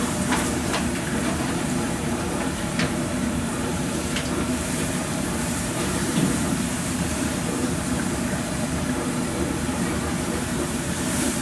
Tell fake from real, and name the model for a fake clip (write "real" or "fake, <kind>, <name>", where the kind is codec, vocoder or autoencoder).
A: fake, vocoder, BigVGAN v2